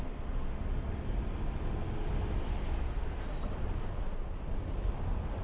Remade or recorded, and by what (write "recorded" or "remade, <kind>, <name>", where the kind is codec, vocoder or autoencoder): recorded